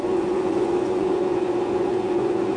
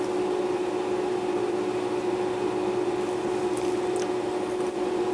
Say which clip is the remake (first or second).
first